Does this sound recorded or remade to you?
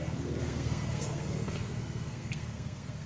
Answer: remade